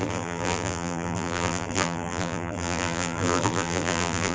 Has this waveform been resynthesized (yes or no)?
yes